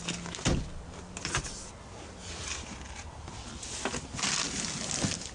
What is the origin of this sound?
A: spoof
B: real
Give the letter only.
B